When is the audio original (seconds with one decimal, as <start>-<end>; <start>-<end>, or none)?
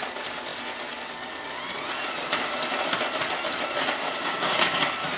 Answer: 0.0-4.0; 4.8-5.2